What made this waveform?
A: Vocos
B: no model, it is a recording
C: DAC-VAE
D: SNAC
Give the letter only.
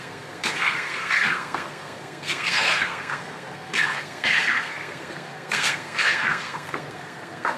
D